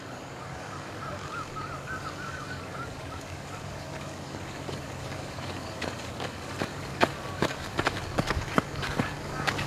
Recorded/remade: remade